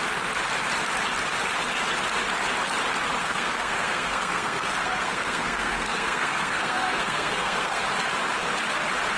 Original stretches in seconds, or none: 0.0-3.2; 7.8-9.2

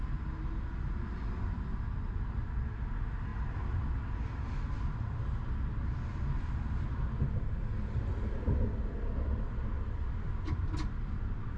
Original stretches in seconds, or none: 0.0-11.6

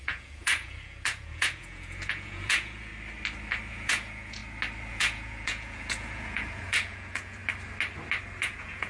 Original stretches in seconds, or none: 2.9-3.7; 4.4-4.9; 7.4-8.4

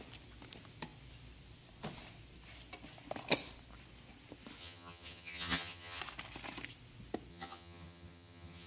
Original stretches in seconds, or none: 0.0-4.6; 6.0-7.3

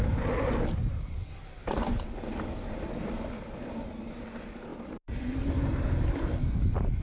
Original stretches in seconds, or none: 0.0-7.0

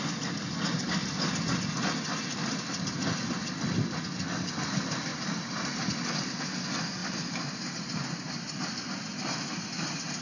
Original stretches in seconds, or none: 0.0-10.2